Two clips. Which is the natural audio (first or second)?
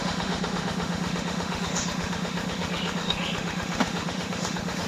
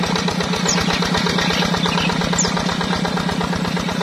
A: second